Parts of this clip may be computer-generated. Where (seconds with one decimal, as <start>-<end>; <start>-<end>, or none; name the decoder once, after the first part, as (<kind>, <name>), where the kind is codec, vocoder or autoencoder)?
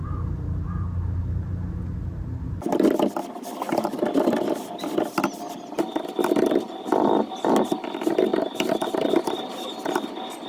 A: 8.3-9.2 (vocoder, BigVGAN v2)